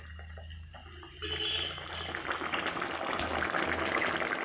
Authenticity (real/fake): real